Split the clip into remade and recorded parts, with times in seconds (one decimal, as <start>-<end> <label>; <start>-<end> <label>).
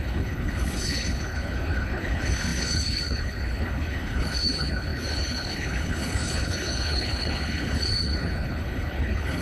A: 0.0-9.4 remade